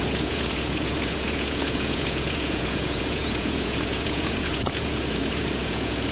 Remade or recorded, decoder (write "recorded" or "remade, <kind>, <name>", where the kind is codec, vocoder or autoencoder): remade, vocoder, Vocos